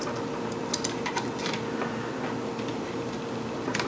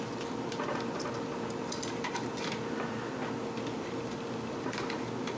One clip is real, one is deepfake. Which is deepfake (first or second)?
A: second